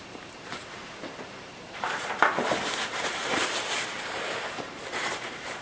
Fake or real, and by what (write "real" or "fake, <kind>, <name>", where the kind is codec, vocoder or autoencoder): fake, vocoder, BigVGAN v2